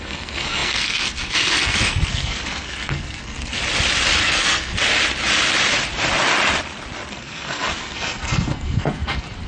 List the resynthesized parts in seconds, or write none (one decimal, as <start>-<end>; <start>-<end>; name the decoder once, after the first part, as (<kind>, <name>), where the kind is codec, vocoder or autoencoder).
0.0-3.6 (codec, SNAC); 4.2-4.8; 7.1-9.5